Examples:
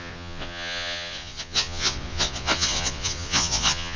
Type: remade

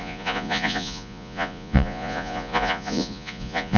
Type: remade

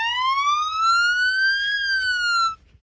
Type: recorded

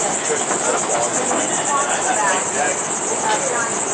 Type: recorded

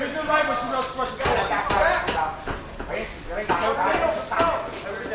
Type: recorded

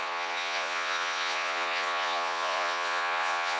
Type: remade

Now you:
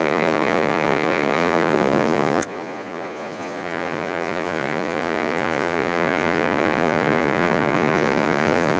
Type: remade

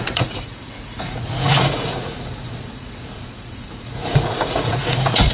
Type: remade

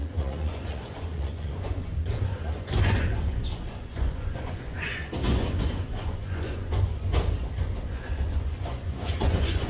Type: remade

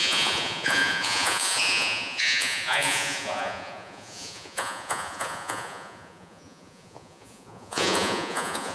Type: remade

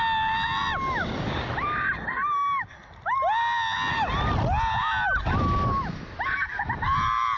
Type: recorded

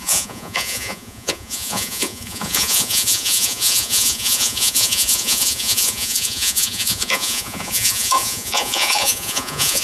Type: remade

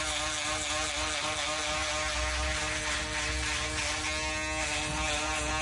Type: recorded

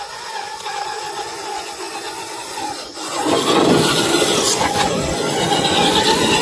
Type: remade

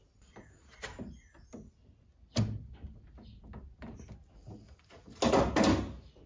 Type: recorded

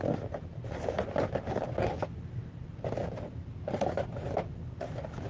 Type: recorded